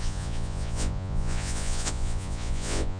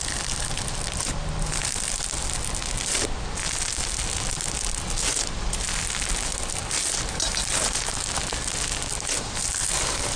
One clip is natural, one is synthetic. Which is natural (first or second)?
second